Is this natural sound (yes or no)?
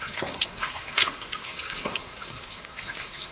no